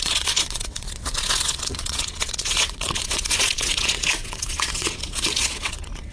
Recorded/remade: remade